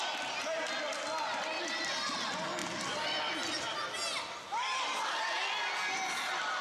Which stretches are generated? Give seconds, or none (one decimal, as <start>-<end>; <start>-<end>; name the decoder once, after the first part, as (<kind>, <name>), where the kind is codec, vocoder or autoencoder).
none